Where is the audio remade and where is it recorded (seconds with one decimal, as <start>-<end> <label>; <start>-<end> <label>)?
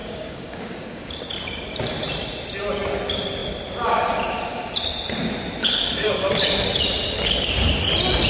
0.0-1.2 remade; 1.2-5.6 recorded; 5.6-6.1 remade; 6.1-8.3 recorded